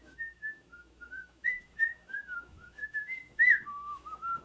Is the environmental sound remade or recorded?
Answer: remade